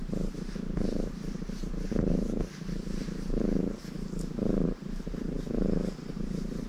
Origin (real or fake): fake